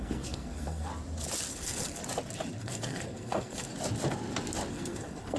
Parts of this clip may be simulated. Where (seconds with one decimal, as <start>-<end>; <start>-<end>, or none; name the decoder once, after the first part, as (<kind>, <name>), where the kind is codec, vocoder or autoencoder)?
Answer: 0.0-0.9 (codec, SNAC); 1.5-2.0; 2.6-3.7; 4.7-5.4